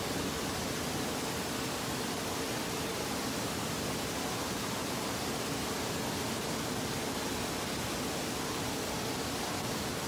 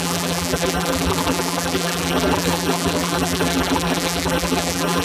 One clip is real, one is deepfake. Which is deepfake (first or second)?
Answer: second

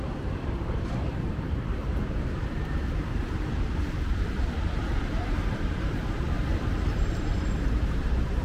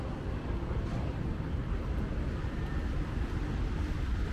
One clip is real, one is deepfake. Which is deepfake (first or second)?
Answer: first